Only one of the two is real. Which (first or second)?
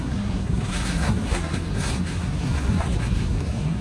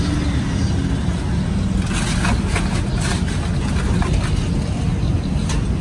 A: second